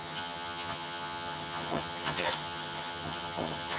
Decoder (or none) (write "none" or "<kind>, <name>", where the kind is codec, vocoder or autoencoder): vocoder, HiFi-GAN